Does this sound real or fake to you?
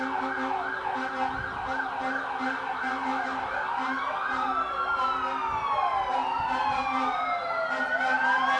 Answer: real